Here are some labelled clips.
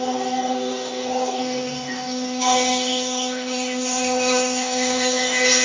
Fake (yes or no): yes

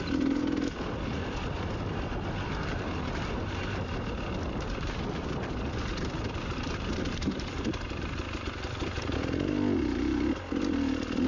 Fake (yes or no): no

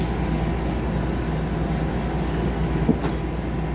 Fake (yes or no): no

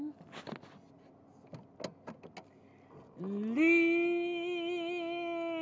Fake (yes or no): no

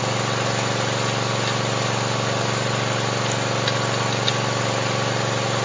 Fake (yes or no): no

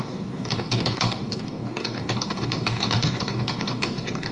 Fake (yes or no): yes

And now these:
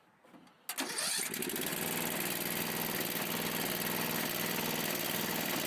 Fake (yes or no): no